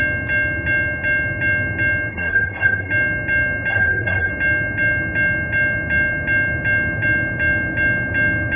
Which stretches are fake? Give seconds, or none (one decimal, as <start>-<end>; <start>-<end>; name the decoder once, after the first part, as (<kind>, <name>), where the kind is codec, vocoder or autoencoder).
2.1-2.9 (codec, SNAC); 3.7-4.3